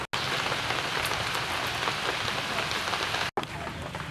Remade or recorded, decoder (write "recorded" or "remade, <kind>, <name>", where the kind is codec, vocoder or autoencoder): recorded